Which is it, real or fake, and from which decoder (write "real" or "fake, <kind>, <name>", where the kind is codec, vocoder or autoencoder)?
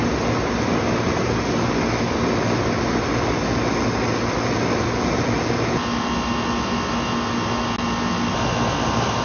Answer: real